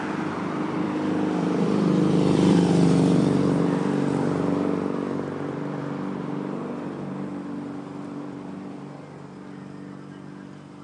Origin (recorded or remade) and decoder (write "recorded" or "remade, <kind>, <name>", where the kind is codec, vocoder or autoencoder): remade, vocoder, BigVGAN v2